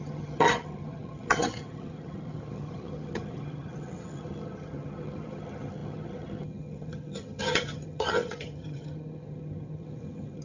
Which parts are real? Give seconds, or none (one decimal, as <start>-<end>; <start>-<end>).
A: none